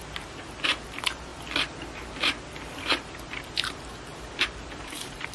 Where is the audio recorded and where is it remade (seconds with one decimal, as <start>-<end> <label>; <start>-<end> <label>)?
0.0-1.3 remade; 1.3-2.7 recorded; 2.7-5.3 remade